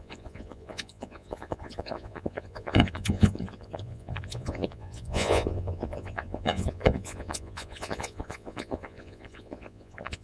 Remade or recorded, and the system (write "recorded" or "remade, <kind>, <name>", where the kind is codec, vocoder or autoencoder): remade, vocoder, Vocos